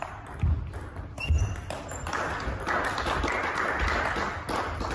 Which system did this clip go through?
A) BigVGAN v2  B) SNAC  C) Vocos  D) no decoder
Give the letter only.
D